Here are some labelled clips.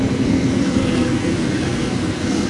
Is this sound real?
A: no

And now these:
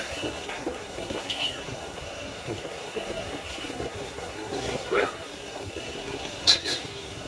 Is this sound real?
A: no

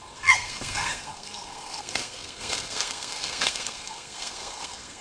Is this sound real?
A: no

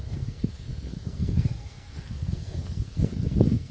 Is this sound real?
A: no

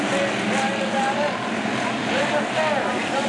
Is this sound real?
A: yes